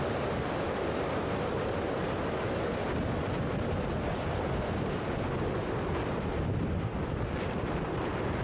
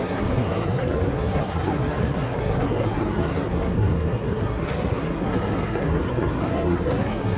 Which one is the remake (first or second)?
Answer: second